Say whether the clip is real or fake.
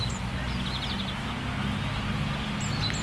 real